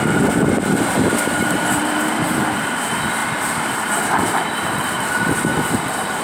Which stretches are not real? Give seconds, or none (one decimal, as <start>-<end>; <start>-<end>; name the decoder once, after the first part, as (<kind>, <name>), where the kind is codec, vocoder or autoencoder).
0.0-6.2 (vocoder, BigVGAN v2)